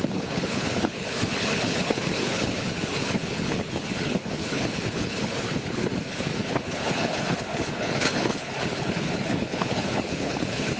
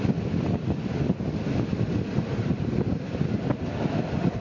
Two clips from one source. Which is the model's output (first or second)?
first